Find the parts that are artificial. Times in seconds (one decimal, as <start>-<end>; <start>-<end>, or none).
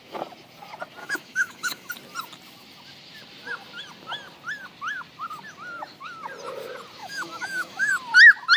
1.0-1.9; 7.0-7.9